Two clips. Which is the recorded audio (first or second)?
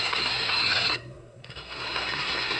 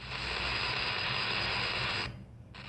second